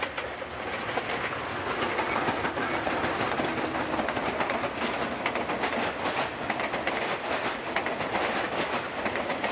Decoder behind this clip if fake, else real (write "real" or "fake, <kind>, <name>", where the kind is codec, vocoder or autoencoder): real